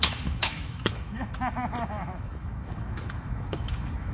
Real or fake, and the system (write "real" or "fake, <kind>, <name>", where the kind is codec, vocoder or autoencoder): fake, autoencoder, DAC-VAE